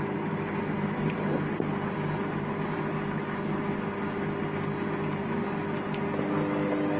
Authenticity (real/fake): real